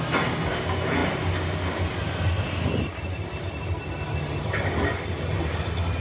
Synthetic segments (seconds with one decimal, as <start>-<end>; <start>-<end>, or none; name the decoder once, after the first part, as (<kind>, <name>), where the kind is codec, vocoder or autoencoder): none